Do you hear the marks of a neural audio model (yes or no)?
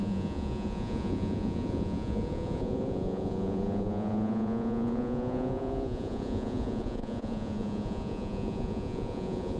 yes